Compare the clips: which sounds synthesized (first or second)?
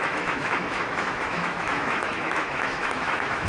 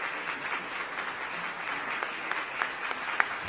first